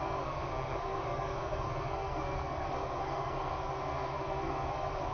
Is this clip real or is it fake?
fake